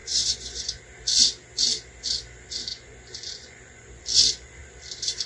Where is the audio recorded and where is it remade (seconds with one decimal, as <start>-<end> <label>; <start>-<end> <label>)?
0.0-0.8 remade; 0.8-2.7 recorded; 2.7-4.0 remade; 4.0-5.3 recorded